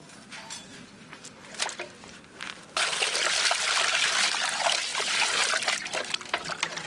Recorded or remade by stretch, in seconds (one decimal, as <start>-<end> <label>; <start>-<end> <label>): 0.0-4.9 recorded; 4.9-5.5 remade; 5.5-6.9 recorded